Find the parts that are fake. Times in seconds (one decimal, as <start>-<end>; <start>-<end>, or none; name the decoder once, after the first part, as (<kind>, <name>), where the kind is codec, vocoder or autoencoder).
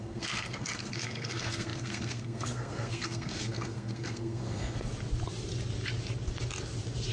0.0-4.9 (codec, SNAC)